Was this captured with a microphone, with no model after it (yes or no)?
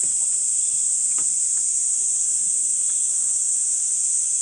no